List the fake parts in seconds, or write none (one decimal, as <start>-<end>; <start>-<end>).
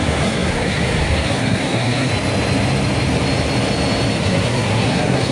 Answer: 0.0-2.1; 4.2-5.3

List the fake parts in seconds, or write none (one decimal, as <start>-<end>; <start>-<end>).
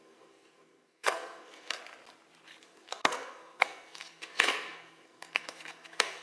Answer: 0.0-1.8; 2.6-6.2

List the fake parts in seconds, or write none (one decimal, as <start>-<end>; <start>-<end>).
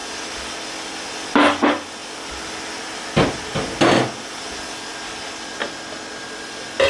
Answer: none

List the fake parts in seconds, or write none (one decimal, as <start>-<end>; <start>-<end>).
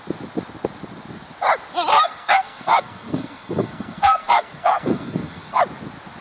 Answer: 1.9-5.6